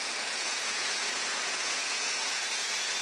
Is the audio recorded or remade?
remade